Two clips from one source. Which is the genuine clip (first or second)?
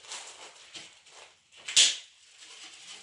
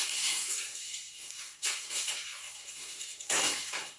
first